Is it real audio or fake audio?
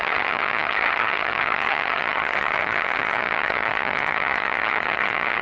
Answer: fake